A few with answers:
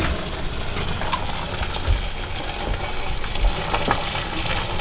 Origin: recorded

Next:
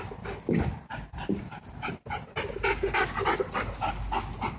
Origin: recorded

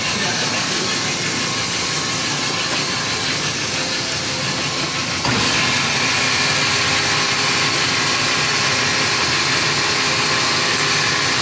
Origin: recorded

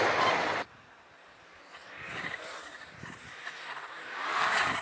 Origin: remade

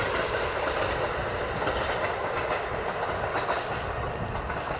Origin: recorded